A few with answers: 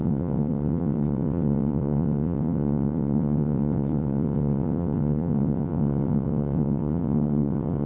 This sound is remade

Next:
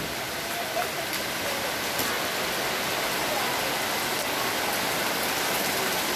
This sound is recorded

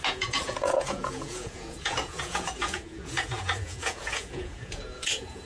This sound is remade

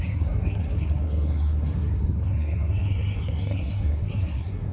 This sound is remade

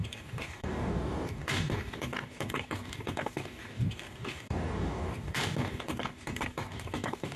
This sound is remade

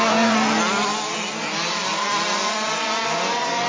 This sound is recorded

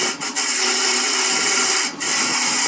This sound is recorded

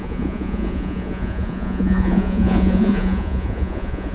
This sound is remade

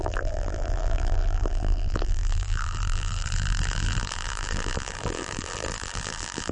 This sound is remade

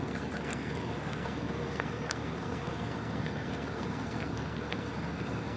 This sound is remade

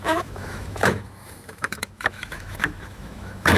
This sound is remade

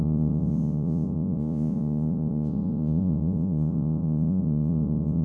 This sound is remade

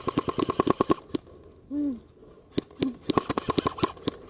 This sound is recorded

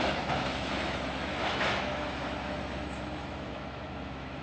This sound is remade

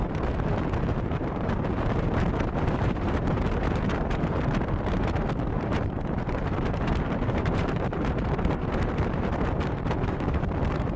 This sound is remade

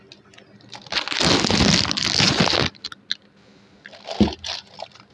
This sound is recorded